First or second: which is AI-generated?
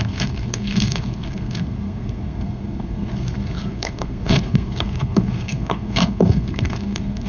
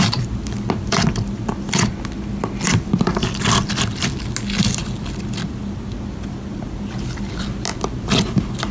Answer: first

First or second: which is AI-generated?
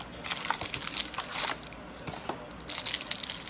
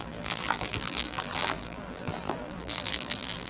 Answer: second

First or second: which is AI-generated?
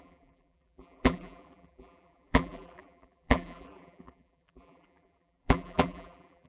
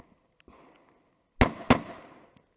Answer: first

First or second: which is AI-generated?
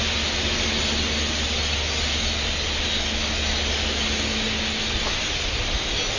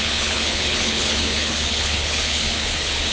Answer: second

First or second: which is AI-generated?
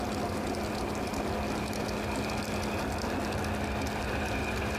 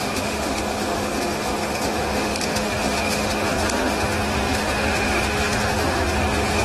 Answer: second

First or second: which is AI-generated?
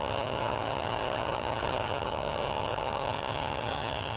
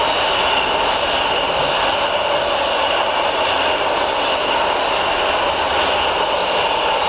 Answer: first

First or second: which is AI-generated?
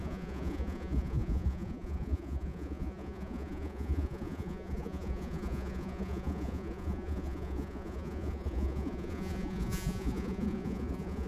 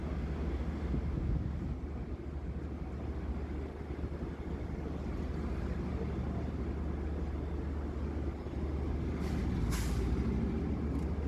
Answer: first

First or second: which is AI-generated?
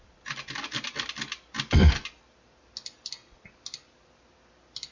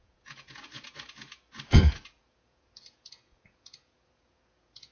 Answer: second